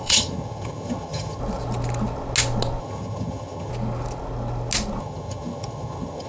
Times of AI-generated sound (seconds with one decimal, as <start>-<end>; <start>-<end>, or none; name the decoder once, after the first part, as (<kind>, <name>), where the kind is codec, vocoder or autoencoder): 0.0-1.4 (vocoder, HiFi-GAN); 2.8-3.7; 5.0-6.3